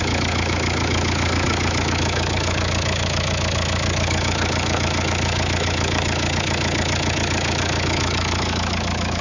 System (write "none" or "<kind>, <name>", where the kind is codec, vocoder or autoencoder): autoencoder, DAC-VAE